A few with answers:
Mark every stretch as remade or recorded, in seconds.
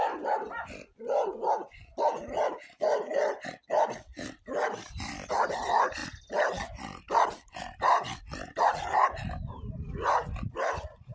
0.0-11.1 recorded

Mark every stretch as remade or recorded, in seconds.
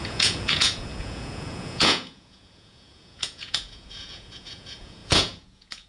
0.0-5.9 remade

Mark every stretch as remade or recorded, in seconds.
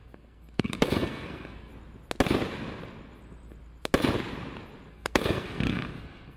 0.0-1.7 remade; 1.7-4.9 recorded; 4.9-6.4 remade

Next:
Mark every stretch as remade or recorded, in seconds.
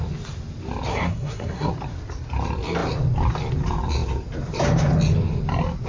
0.0-0.9 recorded; 0.9-1.7 remade; 1.7-5.9 recorded